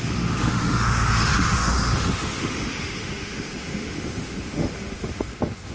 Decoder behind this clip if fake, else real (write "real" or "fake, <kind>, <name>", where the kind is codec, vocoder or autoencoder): fake, autoencoder, DAC-VAE